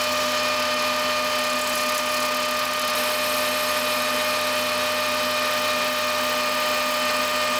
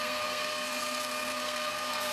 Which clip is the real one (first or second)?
first